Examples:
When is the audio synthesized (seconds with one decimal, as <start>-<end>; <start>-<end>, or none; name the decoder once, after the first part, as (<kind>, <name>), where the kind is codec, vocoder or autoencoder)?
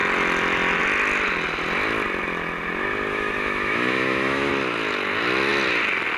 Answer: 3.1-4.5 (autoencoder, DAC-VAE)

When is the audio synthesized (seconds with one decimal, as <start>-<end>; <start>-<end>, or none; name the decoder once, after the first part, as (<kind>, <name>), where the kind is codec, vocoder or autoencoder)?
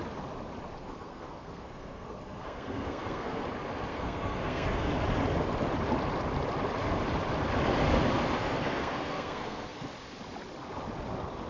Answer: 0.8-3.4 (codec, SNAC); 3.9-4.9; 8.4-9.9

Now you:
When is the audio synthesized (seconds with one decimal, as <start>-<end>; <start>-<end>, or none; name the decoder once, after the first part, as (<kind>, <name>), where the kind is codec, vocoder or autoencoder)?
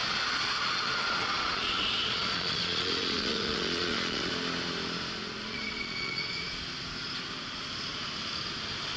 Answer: 0.0-4.3 (vocoder, Vocos); 5.5-6.6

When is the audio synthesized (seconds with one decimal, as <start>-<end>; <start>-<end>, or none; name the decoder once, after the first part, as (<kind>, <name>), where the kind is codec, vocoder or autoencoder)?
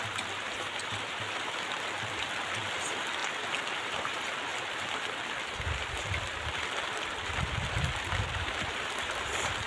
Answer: 0.0-3.2 (vocoder, BigVGAN v2); 3.8-9.7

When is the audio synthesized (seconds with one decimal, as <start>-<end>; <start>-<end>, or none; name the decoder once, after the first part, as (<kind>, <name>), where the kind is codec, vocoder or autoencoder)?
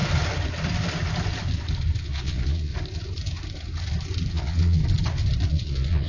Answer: 2.0-2.7 (vocoder, Vocos); 4.3-4.8; 5.5-6.1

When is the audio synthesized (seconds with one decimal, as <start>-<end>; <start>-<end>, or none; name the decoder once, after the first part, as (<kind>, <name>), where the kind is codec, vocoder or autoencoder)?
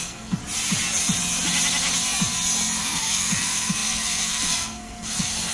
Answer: 0.0-0.4 (codec, SNAC); 2.8-5.5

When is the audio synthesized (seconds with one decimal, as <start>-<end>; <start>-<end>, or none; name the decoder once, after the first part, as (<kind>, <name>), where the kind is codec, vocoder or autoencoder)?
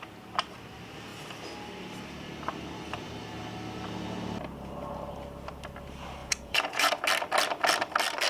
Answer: 6.2-6.9 (vocoder, Vocos)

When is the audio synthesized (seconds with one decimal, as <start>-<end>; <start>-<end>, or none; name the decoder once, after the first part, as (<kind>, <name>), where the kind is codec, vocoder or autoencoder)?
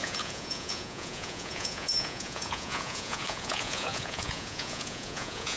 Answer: 0.0-5.6 (vocoder, Vocos)